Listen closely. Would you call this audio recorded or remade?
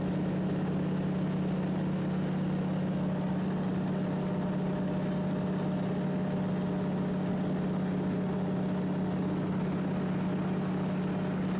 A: recorded